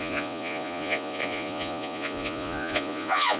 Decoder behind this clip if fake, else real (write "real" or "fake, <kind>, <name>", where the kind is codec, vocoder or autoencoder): fake, vocoder, Vocos